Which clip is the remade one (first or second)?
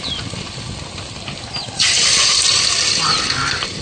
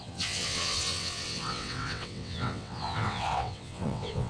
second